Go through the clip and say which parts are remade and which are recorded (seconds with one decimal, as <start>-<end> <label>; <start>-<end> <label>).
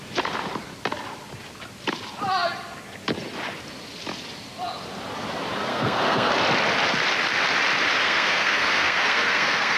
0.0-5.7 recorded; 5.7-6.3 remade; 6.3-8.0 recorded; 8.0-9.8 remade